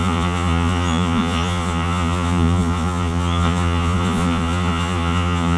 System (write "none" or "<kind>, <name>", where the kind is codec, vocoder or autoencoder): vocoder, Vocos